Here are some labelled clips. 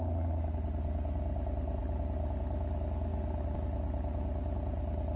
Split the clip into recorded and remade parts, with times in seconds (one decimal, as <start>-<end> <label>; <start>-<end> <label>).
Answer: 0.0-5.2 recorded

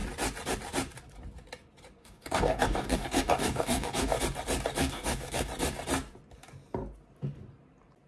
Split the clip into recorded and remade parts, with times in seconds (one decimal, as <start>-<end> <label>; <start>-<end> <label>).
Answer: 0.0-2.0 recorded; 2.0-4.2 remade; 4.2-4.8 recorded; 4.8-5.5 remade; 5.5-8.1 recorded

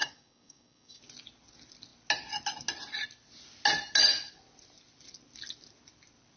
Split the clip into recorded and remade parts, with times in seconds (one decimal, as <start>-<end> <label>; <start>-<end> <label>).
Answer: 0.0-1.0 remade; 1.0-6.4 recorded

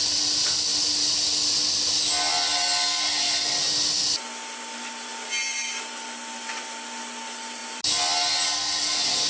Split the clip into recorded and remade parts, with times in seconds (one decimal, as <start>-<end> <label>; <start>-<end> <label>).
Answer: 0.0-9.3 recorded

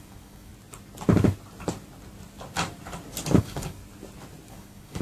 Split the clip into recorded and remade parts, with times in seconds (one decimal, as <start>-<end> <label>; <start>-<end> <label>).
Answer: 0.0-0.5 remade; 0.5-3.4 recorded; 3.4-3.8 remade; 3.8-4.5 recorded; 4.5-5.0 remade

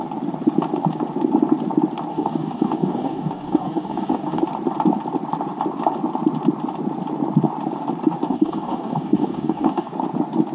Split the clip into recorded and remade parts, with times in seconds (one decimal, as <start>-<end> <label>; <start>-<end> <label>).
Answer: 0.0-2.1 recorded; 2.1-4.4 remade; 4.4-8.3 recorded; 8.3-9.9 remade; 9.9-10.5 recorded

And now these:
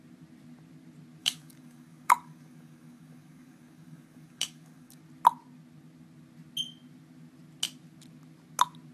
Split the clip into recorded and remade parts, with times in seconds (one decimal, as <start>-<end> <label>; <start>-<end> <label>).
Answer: 0.0-1.2 recorded; 1.2-5.0 remade; 5.0-8.9 recorded